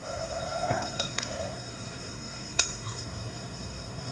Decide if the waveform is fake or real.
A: fake